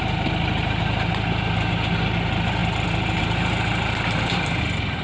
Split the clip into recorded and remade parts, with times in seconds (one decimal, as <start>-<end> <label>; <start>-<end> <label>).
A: 0.0-5.0 recorded